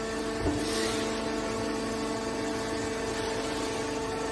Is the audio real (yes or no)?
yes